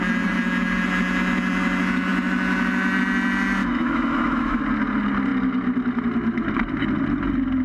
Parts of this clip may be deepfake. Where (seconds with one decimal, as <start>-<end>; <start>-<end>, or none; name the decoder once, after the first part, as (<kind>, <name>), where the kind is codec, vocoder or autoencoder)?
3.6-4.6 (autoencoder, DAC-VAE)